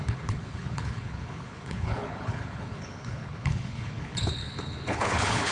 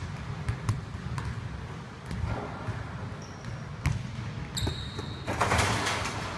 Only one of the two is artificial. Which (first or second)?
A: first